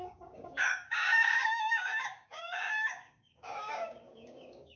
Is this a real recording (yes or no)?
no